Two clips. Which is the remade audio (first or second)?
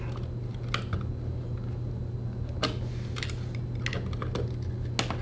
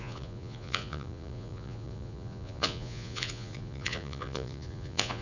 second